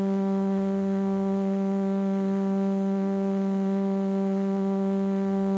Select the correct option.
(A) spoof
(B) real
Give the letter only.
A